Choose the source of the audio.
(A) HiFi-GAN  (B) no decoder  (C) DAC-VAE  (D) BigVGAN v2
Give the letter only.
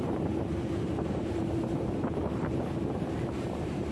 D